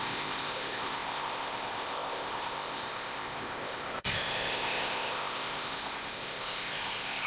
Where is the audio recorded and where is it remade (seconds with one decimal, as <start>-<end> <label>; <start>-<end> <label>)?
0.0-7.3 remade